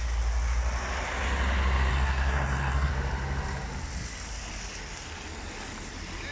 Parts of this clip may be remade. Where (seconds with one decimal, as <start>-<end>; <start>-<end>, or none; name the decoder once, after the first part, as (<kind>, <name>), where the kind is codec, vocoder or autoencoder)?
1.9-2.9 (codec, SNAC)